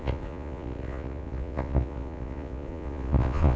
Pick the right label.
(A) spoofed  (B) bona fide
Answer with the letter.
A